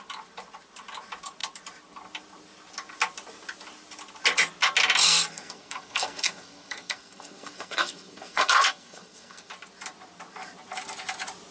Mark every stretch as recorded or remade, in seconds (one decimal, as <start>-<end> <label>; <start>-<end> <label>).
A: 0.0-5.0 recorded; 5.0-9.5 remade; 9.5-11.5 recorded